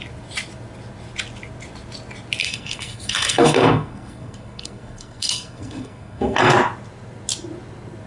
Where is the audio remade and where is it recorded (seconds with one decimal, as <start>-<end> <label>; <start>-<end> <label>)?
0.0-2.4 recorded; 2.4-6.5 remade; 6.5-8.1 recorded